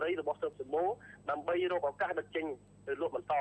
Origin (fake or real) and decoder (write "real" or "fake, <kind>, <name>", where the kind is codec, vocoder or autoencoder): real